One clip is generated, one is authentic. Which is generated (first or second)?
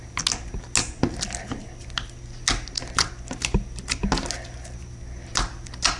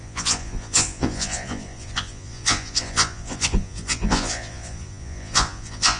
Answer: second